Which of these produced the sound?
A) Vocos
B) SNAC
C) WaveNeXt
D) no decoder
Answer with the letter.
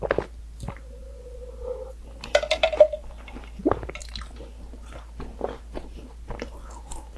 D